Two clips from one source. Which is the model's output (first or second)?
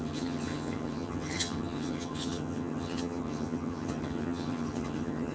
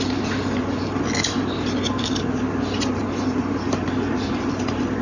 first